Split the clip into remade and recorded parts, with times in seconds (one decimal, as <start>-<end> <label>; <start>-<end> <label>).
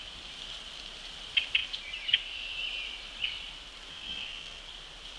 0.0-3.9 recorded; 3.9-4.6 remade; 4.6-5.2 recorded